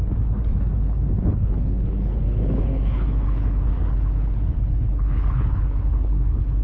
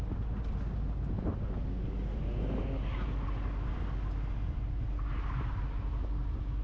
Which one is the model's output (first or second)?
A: first